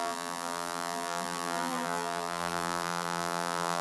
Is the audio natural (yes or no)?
no